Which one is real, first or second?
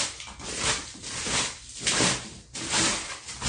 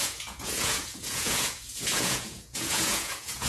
first